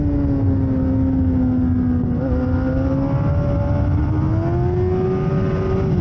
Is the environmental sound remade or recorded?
recorded